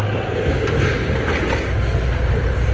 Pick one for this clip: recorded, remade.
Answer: recorded